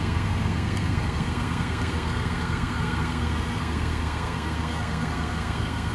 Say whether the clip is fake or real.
fake